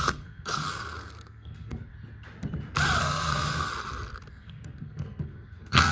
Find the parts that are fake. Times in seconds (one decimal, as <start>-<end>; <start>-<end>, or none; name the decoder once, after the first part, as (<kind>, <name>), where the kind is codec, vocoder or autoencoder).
0.0-1.9 (codec, SNAC); 3.0-3.7; 4.3-5.9